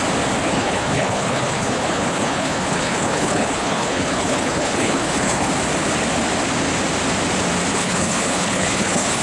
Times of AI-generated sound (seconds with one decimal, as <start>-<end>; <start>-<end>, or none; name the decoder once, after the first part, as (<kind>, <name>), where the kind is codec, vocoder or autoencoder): 0.4-5.5 (codec, HILCodec); 7.7-9.2